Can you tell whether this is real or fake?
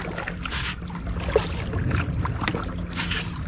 real